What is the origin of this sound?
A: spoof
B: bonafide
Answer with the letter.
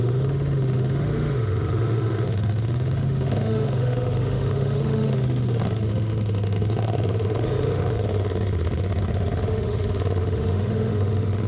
A